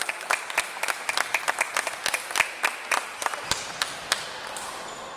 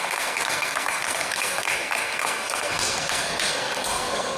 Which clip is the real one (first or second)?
first